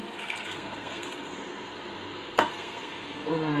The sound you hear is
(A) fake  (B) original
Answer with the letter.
A